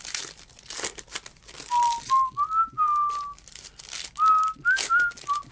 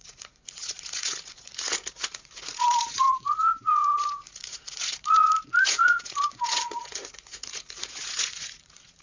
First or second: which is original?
first